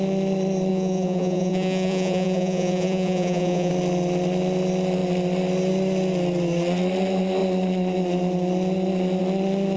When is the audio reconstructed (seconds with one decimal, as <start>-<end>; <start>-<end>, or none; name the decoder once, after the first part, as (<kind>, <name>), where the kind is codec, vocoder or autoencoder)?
0.7-3.7 (vocoder, Vocos)